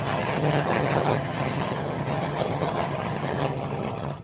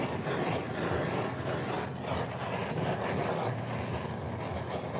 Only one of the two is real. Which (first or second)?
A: second